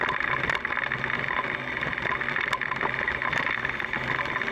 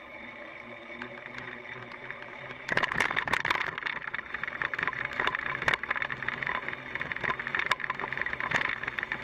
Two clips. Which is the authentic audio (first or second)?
first